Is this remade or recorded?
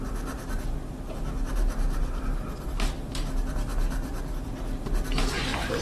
recorded